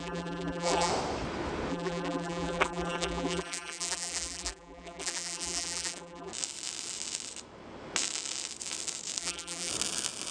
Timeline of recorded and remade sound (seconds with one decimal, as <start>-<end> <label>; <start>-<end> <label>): 0.0-0.9 remade; 0.9-1.7 recorded; 1.7-6.3 remade; 6.3-9.2 recorded; 9.2-9.7 remade; 9.7-10.3 recorded